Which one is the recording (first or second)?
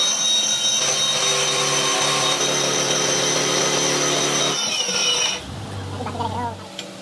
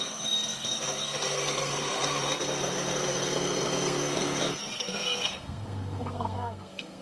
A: first